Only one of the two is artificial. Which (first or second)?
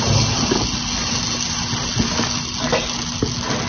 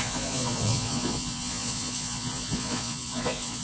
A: second